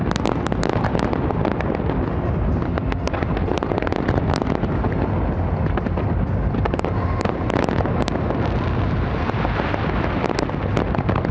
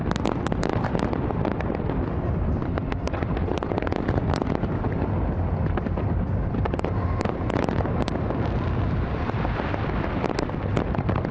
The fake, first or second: second